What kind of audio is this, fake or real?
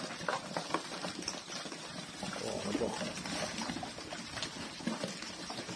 real